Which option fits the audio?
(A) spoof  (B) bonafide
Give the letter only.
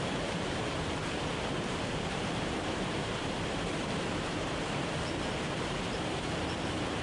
A